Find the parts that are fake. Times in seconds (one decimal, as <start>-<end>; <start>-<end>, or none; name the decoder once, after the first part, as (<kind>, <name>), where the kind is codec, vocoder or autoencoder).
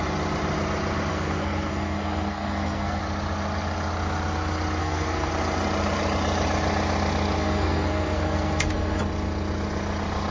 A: 1.1-3.0 (codec, SNAC); 4.8-5.3; 7.4-9.0